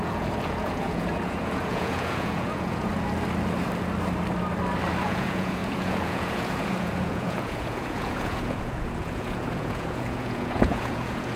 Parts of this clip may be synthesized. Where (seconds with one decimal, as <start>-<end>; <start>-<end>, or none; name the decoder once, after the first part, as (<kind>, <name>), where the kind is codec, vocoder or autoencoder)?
0.0-2.9 (vocoder, Vocos); 5.0-11.4